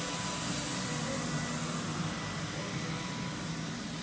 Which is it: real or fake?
real